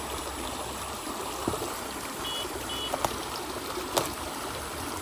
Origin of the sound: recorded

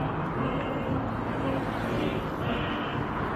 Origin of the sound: recorded